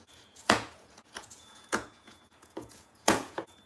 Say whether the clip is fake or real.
fake